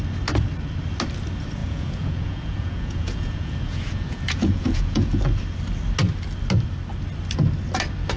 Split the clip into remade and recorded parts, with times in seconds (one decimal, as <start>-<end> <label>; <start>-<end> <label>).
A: 0.0-1.6 recorded; 1.6-5.2 remade; 5.2-8.2 recorded